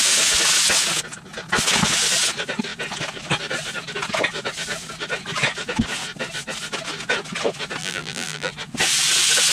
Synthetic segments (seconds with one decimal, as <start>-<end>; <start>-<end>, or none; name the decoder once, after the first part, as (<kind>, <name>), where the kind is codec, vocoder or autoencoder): 7.8-8.5 (vocoder, BigVGAN v2)